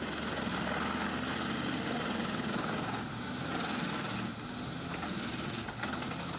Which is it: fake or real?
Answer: real